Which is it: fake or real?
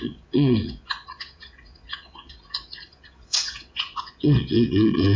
fake